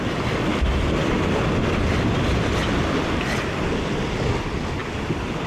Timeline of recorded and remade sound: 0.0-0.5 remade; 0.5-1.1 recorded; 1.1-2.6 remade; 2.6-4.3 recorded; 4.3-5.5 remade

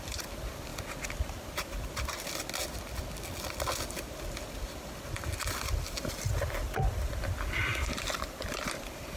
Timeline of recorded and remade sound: 0.0-0.7 remade; 0.7-5.5 recorded; 5.5-9.2 remade

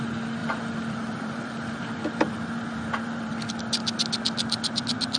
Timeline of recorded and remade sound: 0.0-0.4 recorded; 0.4-3.5 remade; 3.5-5.2 recorded

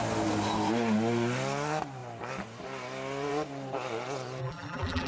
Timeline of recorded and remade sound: 0.0-4.4 recorded; 4.4-5.1 remade